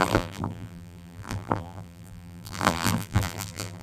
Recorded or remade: remade